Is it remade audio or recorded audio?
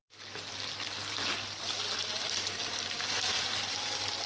recorded